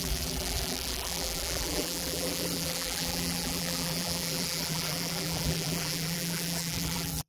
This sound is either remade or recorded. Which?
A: remade